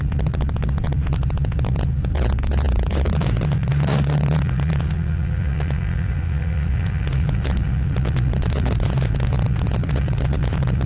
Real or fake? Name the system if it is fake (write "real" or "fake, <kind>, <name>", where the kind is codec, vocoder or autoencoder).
fake, vocoder, Vocos